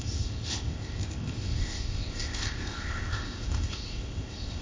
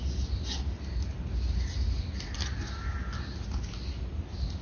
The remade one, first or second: first